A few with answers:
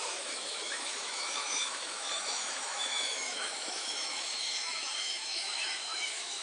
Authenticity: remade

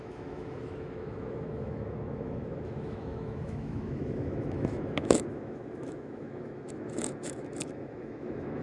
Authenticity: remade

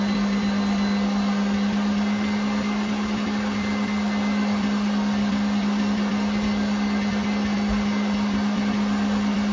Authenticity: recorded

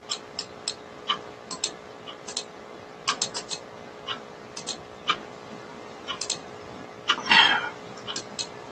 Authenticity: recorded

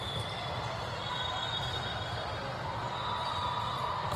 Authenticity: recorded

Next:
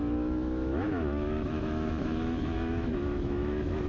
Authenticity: remade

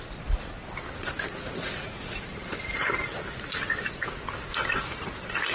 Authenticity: recorded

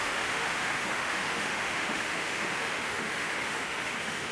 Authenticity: remade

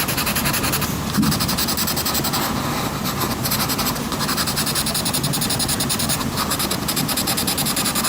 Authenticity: recorded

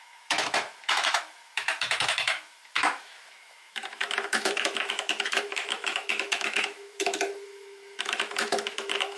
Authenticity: remade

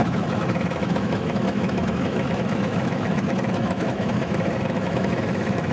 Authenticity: remade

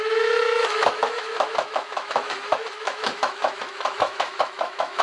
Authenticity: remade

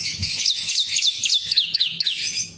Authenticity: remade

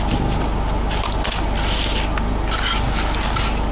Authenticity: recorded